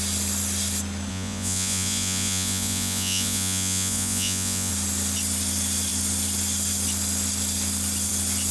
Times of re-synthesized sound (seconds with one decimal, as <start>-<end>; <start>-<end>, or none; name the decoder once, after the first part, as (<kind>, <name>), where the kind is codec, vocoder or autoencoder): 1.1-4.7 (vocoder, Vocos)